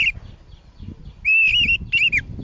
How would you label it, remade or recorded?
recorded